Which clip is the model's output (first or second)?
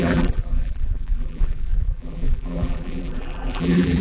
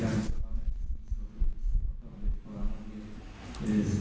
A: first